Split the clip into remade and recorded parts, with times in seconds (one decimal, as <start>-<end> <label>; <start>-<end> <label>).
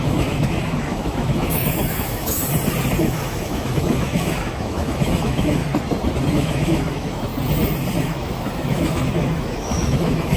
0.0-2.4 remade; 2.4-3.0 recorded; 3.0-5.6 remade; 5.6-6.3 recorded; 6.3-7.3 remade; 7.3-8.0 recorded; 8.0-10.4 remade